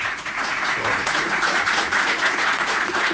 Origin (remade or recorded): remade